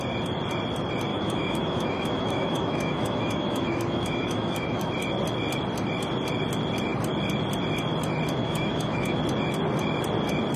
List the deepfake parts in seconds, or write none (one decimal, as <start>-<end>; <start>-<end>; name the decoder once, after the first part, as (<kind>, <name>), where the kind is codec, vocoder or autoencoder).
1.1-4.9 (autoencoder, DAC-VAE); 8.4-9.2